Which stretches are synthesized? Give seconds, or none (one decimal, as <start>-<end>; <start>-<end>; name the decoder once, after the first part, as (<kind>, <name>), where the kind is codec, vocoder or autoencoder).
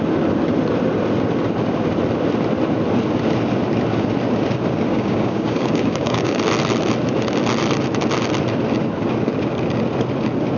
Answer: 4.9-6.4 (codec, DAC)